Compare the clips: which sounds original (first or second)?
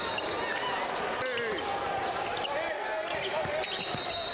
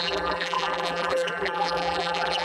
first